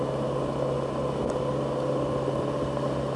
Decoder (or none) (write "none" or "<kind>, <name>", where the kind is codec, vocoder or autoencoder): none